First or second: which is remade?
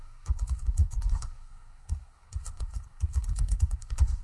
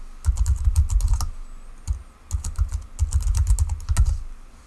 first